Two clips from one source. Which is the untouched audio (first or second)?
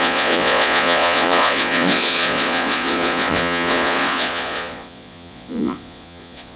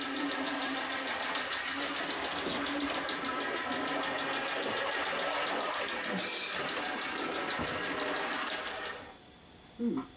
second